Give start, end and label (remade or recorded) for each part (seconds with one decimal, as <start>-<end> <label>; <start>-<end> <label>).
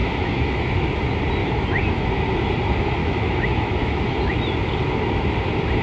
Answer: 0.0-0.9 remade; 0.9-1.4 recorded; 1.4-2.1 remade; 2.1-3.0 recorded; 3.0-4.4 remade; 4.4-5.8 recorded